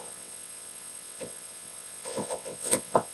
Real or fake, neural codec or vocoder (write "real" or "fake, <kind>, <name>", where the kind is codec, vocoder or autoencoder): fake, vocoder, WaveNeXt